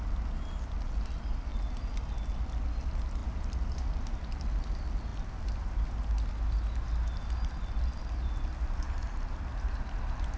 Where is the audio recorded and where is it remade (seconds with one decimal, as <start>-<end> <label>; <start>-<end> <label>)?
0.0-10.4 recorded